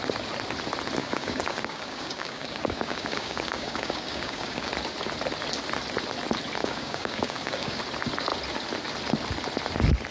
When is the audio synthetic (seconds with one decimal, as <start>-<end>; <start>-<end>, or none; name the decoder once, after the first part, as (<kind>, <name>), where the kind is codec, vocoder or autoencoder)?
1.0-4.7 (codec, DAC); 6.6-7.8